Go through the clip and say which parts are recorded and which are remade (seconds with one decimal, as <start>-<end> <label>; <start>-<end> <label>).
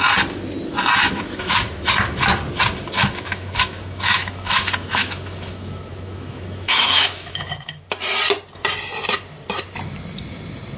0.0-1.0 recorded; 1.0-1.6 remade; 1.6-3.0 recorded; 3.0-7.8 remade; 7.8-10.8 recorded